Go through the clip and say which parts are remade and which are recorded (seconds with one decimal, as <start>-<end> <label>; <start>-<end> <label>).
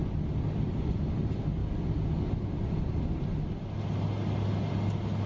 0.0-5.3 recorded